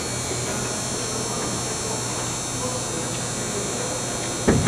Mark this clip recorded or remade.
recorded